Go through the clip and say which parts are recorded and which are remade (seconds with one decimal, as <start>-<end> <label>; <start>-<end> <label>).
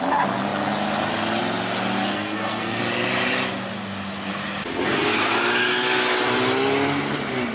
0.0-2.0 recorded; 2.0-2.8 remade; 2.8-7.5 recorded